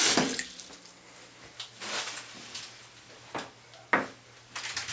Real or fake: real